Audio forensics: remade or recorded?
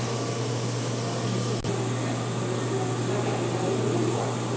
recorded